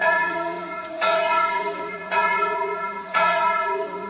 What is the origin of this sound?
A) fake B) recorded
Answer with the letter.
A